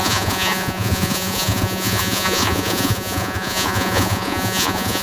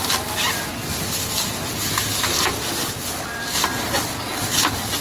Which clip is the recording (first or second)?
second